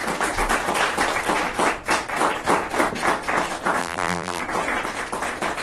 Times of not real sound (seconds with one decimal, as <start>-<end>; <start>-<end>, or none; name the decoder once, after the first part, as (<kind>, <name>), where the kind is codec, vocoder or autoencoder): 3.8-4.4 (vocoder, BigVGAN v2)